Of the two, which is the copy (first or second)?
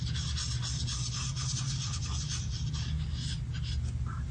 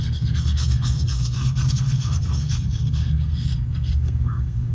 second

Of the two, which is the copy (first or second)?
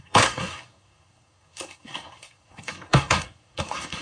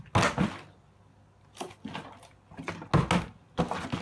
first